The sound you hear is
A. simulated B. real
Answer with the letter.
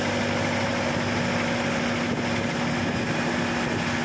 B